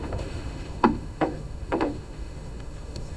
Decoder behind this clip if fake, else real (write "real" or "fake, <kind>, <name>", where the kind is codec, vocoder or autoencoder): fake, autoencoder, DAC-VAE